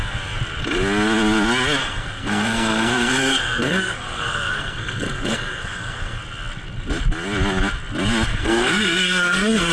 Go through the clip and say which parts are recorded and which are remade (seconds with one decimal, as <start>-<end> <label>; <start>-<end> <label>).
0.0-1.8 recorded; 1.8-6.2 remade; 6.2-8.3 recorded; 8.3-9.7 remade